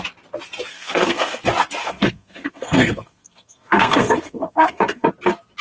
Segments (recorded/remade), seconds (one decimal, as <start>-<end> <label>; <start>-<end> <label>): 0.0-0.7 recorded; 0.7-1.4 remade; 1.4-1.8 recorded; 1.8-5.1 remade; 5.1-5.6 recorded

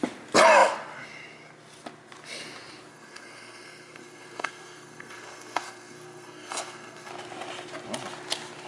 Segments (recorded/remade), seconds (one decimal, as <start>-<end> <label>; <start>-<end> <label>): 0.0-2.9 recorded; 2.9-7.1 remade; 7.1-8.7 recorded

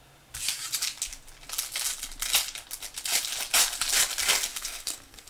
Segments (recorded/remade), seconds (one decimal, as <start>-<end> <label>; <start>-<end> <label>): 0.0-4.5 recorded; 4.5-5.3 remade

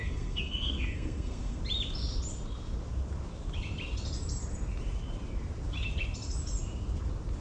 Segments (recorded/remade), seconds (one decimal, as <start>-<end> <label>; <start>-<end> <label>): 0.0-1.6 remade; 1.6-7.4 recorded